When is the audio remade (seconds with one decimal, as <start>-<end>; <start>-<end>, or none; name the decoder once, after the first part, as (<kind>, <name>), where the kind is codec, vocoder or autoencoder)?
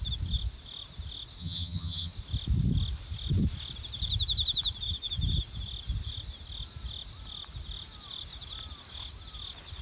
1.4-2.1 (vocoder, HiFi-GAN)